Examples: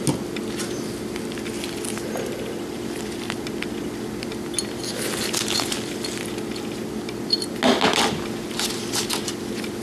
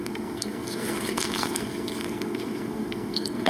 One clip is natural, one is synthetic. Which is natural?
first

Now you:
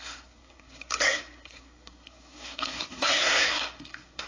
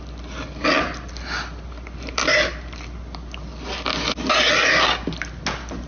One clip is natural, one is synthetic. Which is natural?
second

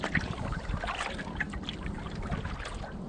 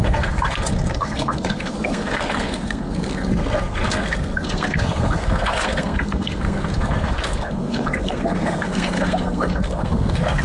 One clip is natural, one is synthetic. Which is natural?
first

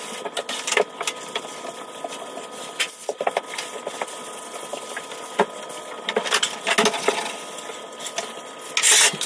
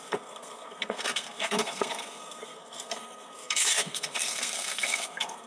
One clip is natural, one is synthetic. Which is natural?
first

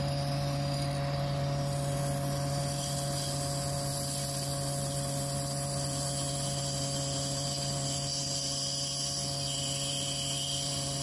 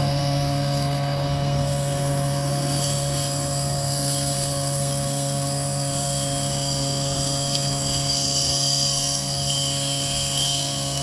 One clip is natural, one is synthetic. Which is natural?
first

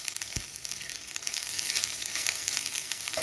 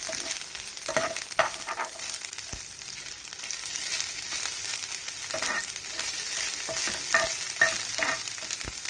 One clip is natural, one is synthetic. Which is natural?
second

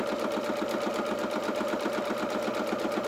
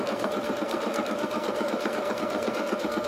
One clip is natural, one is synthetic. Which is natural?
first